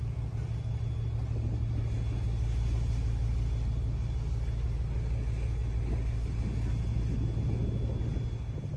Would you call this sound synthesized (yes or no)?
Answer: no